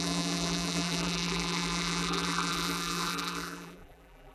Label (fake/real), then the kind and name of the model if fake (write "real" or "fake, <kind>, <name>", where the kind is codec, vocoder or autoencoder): fake, vocoder, BigVGAN v2